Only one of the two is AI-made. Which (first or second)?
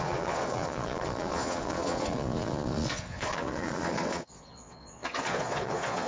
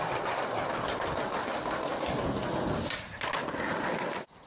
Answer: first